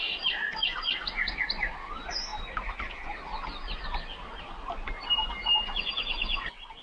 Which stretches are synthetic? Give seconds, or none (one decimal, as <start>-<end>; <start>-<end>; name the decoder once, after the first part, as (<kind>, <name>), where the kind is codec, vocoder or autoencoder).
none

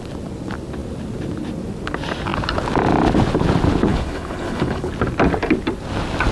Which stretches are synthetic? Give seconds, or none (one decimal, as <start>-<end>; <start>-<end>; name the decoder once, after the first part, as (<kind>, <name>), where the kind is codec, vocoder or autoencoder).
3.9-4.9 (codec, HILCodec)

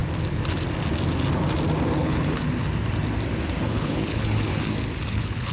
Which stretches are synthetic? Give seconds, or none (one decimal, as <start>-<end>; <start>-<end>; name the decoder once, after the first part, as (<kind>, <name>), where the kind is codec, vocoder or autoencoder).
2.0-2.4 (codec, HILCodec); 3.6-4.5; 5.1-5.5

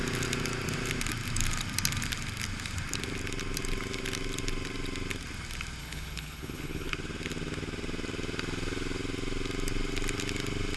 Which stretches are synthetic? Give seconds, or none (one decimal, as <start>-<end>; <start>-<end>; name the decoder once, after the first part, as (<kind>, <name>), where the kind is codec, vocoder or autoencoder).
5.8-6.9 (codec, HILCodec)

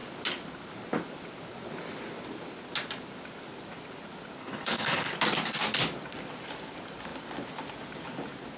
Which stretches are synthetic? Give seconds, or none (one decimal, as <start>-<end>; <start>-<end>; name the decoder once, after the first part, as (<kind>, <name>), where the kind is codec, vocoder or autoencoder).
4.4-5.1 (codec, HILCodec)

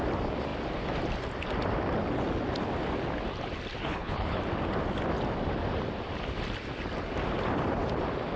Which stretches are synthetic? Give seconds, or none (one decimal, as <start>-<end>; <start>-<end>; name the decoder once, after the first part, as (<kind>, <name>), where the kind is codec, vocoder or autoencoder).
3.8-4.4 (codec, HILCodec)